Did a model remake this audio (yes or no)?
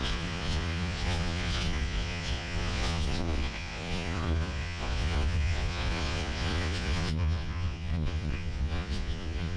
yes